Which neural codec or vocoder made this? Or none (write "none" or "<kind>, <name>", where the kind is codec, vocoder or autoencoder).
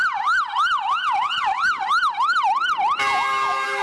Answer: none